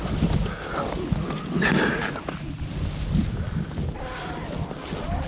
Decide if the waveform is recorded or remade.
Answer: recorded